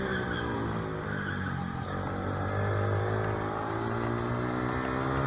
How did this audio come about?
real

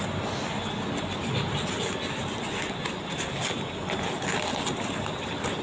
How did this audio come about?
real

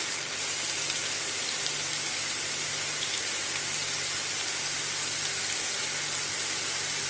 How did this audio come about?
fake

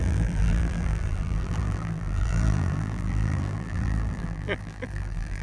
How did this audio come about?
fake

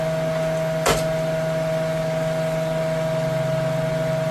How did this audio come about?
real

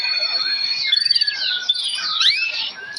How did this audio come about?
fake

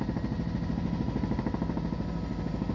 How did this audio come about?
real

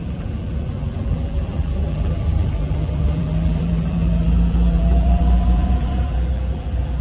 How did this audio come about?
fake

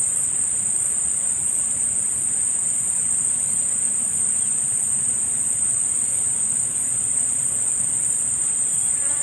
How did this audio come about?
fake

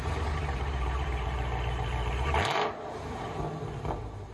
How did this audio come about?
fake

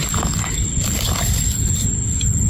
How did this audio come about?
real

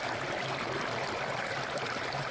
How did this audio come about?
real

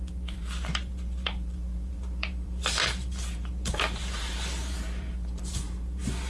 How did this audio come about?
fake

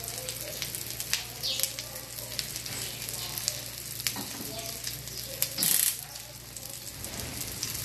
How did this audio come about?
real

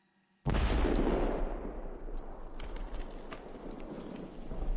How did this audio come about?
real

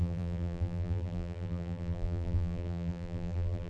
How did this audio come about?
fake